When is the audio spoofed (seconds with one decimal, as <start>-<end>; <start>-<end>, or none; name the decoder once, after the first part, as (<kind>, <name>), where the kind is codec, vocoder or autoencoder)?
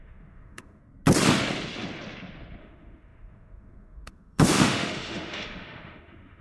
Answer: 0.0-0.8 (autoencoder, DAC-VAE); 2.6-6.4